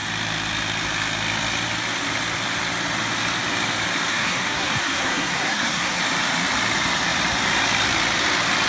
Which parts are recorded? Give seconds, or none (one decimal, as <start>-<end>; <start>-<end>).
0.0-4.1; 6.0-8.7